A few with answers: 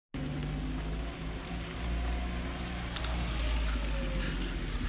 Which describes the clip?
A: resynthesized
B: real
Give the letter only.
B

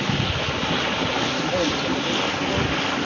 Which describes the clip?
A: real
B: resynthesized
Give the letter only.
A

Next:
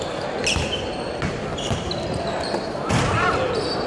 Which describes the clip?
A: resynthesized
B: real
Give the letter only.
B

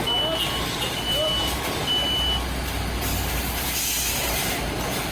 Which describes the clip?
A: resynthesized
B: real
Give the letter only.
B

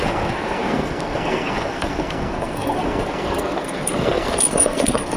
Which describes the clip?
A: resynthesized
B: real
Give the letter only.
A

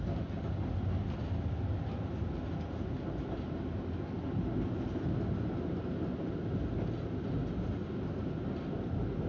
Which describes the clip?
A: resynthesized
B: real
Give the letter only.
B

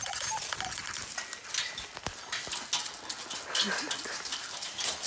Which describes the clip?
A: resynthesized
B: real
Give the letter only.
B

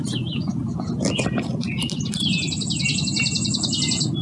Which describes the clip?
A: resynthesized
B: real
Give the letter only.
B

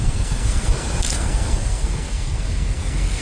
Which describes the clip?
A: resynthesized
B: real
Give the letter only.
A